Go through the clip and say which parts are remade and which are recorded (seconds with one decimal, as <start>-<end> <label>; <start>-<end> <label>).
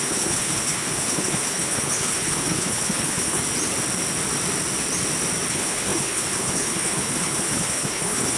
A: 0.0-3.4 remade; 3.4-5.5 recorded; 5.5-8.4 remade